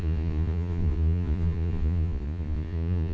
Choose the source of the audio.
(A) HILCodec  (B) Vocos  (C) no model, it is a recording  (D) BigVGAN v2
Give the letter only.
B